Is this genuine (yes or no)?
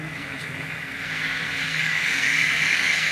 no